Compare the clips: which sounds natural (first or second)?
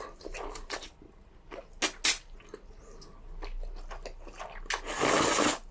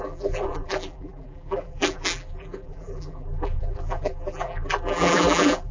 first